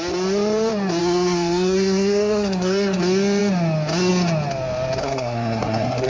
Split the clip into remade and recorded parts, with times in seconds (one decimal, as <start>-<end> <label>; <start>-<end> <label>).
0.0-1.0 recorded; 1.0-3.0 remade; 3.0-5.0 recorded; 5.0-6.1 remade